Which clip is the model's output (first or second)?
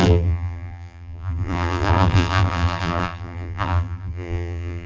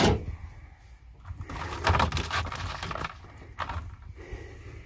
first